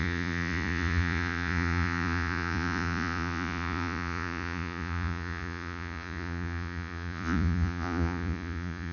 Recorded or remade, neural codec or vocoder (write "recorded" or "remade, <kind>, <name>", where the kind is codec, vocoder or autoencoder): remade, vocoder, Vocos